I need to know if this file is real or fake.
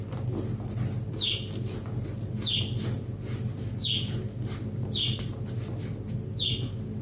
real